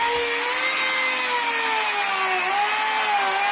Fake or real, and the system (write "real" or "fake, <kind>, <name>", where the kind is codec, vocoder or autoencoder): real